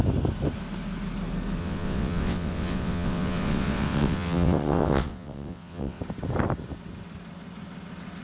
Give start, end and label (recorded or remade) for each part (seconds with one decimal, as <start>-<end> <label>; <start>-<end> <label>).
0.0-1.6 recorded; 1.6-6.0 remade; 6.0-8.2 recorded